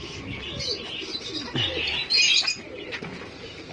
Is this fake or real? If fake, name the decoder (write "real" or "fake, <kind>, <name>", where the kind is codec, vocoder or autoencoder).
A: real